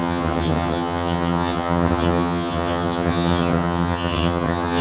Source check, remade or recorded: remade